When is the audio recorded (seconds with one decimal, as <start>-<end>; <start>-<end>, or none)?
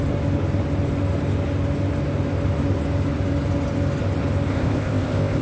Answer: 0.0-4.5